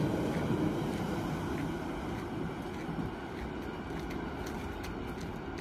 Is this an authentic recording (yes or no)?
yes